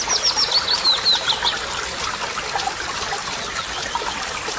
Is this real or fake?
real